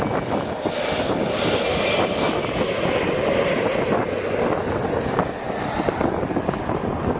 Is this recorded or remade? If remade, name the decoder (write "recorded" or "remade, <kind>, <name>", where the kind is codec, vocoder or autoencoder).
recorded